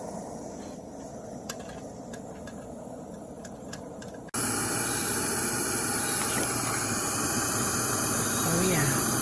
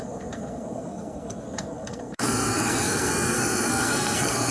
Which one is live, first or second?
first